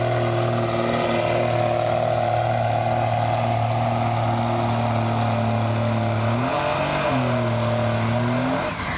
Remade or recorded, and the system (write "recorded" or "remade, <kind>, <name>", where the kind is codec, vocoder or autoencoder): recorded